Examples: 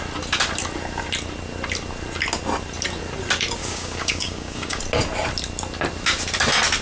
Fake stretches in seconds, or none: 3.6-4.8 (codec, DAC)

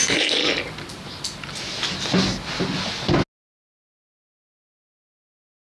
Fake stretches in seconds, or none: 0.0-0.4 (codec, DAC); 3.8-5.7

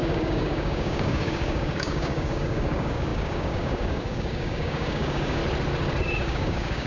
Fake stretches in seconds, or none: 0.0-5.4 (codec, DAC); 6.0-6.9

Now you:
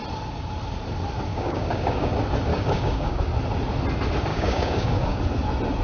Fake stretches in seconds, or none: 1.3-2.1 (codec, DAC); 2.5-3.2; 4.3-5.2

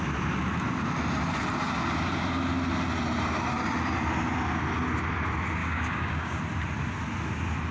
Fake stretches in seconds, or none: 5.6-6.4 (codec, DAC)

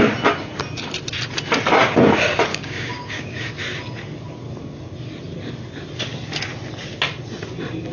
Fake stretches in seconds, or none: 2.5-3.5 (codec, DAC)

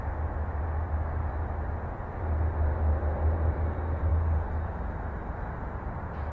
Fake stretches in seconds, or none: none